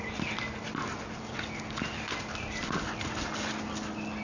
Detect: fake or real real